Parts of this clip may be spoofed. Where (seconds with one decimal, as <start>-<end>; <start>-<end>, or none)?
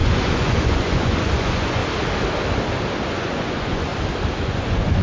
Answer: 0.0-1.8; 3.1-3.9; 4.4-5.0